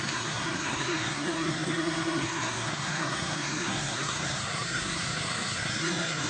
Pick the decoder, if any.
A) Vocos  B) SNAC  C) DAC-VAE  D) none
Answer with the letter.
B